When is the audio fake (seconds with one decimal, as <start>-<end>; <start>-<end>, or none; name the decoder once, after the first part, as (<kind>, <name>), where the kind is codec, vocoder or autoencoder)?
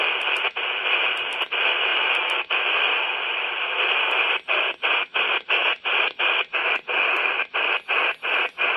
1.9-5.0 (vocoder, BigVGAN v2); 5.6-6.2